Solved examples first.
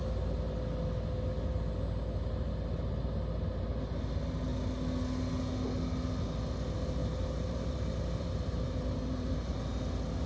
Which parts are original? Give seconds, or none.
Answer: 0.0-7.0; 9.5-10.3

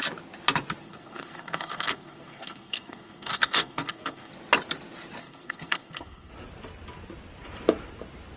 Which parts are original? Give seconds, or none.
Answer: 0.0-0.8; 4.3-5.2; 6.3-8.4

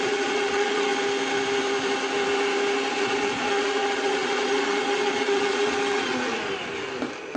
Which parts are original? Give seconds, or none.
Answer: 0.9-2.9; 6.3-7.4